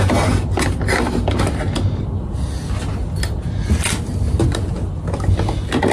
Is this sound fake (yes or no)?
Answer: no